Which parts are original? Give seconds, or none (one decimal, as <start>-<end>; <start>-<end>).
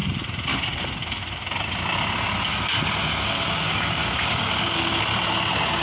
0.0-3.1; 5.0-5.8